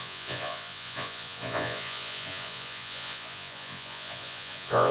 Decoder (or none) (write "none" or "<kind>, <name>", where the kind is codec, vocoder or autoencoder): vocoder, Vocos